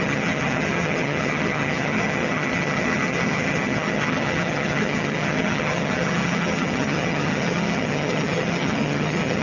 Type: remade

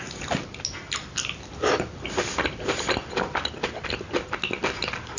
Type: recorded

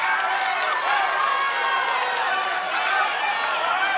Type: remade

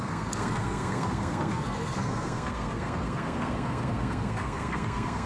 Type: remade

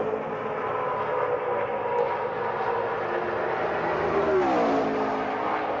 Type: recorded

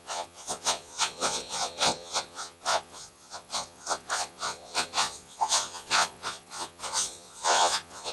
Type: remade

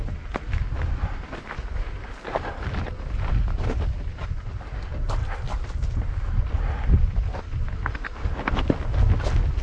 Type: recorded